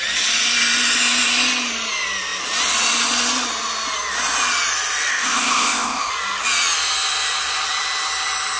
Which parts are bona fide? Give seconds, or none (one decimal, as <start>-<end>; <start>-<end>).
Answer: 0.0-5.1; 6.1-8.6